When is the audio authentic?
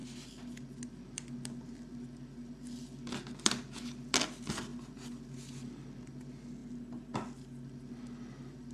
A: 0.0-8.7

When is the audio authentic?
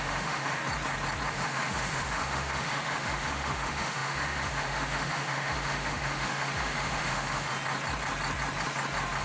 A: 0.6-1.3; 7.5-9.2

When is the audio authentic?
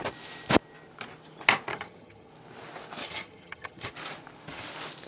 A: 0.0-1.7; 2.3-3.0; 3.9-5.1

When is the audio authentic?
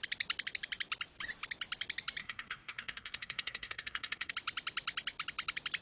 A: 0.0-2.2; 4.3-5.8